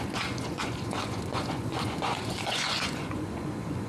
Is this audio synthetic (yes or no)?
yes